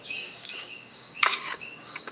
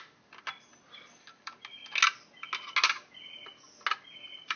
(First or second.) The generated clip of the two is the first